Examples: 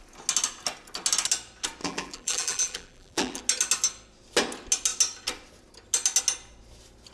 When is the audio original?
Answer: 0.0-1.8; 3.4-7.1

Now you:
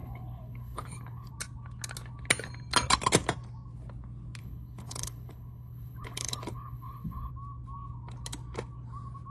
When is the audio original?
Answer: 1.3-4.4; 7.3-9.3

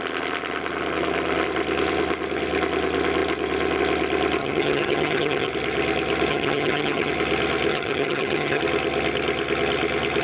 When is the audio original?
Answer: 0.0-4.4; 5.5-6.3; 7.1-7.7; 8.6-10.2

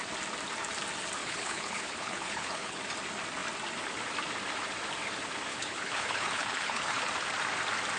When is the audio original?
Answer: 0.0-1.2; 2.8-5.5; 7.1-8.0

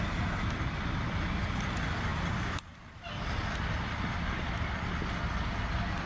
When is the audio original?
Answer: 0.0-6.1

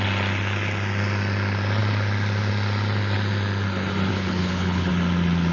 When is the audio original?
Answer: 0.0-4.1; 4.9-5.5

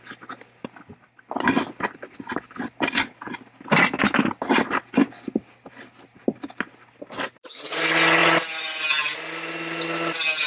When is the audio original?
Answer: 0.0-10.5